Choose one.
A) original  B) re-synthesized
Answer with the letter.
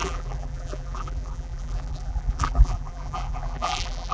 B